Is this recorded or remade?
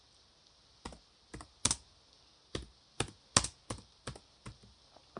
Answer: recorded